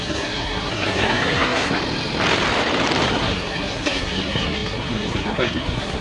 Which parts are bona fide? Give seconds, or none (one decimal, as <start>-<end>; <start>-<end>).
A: 1.8-3.1